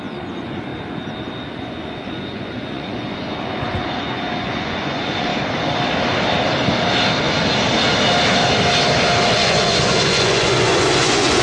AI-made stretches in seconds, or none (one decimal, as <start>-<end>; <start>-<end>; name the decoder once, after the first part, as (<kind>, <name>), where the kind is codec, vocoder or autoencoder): 0.0-0.7 (vocoder, Vocos); 1.5-5.3; 9.3-11.4